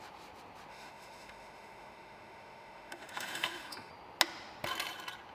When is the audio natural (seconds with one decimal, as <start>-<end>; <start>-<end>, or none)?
0.0-0.7; 3.9-5.3